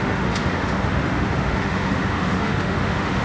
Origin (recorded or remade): remade